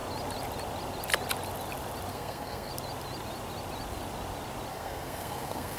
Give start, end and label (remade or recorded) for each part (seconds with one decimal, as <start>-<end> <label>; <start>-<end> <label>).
0.0-2.1 recorded; 2.1-2.7 remade; 2.7-4.7 recorded; 4.7-5.8 remade

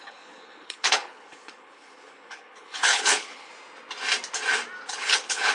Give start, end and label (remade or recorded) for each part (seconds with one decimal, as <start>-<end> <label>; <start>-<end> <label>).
0.0-3.5 remade; 3.5-4.9 recorded; 4.9-5.5 remade